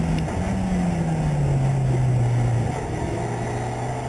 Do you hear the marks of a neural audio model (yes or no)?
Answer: no